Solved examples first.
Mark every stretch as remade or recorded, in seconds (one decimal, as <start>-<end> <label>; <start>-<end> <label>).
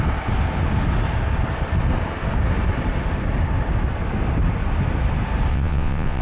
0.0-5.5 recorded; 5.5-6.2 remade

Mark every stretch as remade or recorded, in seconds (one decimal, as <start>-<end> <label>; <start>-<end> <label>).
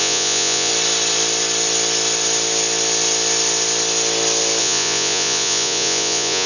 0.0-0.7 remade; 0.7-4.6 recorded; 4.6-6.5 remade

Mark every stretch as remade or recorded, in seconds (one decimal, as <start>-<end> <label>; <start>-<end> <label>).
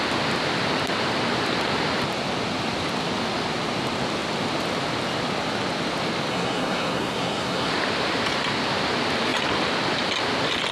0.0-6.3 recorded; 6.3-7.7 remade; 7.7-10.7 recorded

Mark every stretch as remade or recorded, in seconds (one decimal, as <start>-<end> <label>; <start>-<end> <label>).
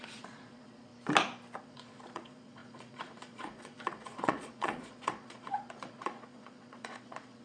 0.0-0.9 remade; 0.9-1.6 recorded; 1.6-7.4 remade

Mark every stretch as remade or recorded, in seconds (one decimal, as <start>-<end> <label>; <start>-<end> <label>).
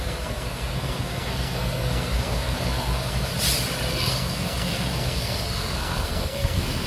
0.0-3.3 remade; 3.3-3.9 recorded; 3.9-6.9 remade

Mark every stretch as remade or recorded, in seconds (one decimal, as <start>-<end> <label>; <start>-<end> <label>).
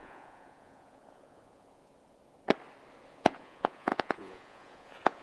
0.0-1.9 remade; 1.9-3.1 recorded; 3.1-5.2 remade